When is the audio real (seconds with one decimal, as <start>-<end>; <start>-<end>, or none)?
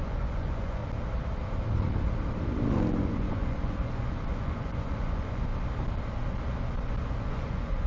0.8-3.0; 5.5-7.2